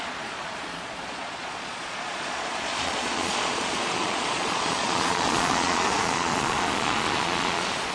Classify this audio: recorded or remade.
remade